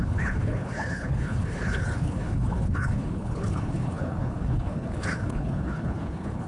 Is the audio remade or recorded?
remade